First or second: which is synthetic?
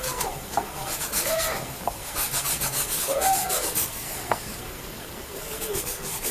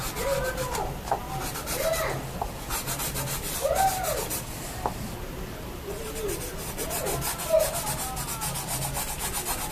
first